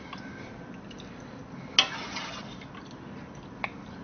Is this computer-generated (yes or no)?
no